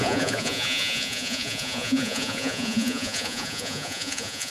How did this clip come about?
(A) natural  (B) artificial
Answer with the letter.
B